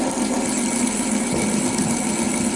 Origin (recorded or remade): recorded